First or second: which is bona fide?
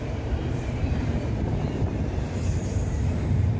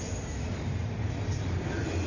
second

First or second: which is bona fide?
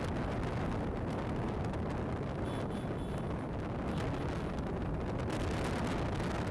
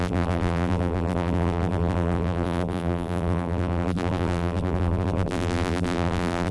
first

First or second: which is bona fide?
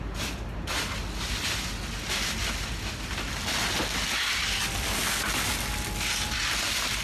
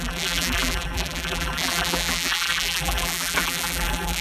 first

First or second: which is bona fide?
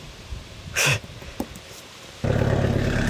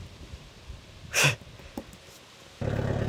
second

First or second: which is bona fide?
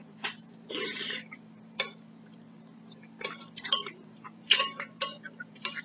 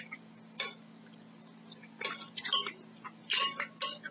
second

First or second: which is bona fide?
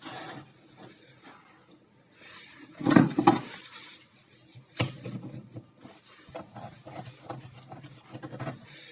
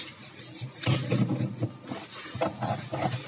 second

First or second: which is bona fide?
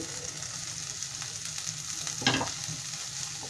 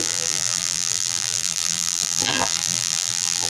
first